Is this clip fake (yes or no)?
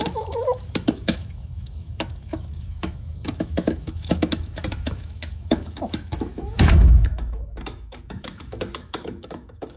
yes